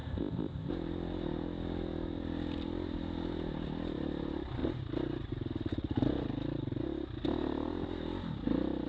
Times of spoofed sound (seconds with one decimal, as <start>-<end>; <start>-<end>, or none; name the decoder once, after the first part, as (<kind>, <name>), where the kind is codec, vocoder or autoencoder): 0.0-0.7 (codec, ZipCodec)